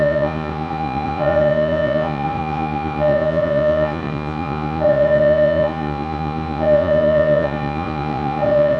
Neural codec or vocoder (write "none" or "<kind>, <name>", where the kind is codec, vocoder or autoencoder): vocoder, Vocos